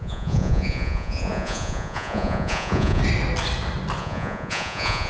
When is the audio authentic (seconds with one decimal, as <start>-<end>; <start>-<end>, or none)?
3.0-4.0